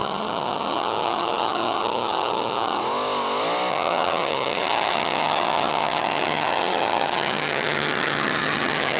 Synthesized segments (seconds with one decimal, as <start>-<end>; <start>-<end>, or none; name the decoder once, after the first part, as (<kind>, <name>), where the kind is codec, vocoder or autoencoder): 0.0-2.8 (vocoder, HiFi-GAN); 3.7-9.0